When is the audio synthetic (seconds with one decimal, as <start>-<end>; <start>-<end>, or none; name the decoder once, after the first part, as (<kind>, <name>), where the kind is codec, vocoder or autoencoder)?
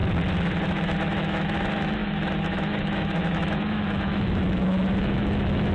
0.7-5.7 (autoencoder, DAC-VAE)